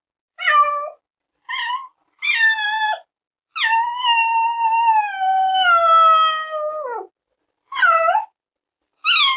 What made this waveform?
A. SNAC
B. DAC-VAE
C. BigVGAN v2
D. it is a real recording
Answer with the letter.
D